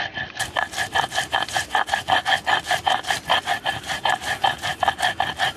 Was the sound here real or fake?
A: real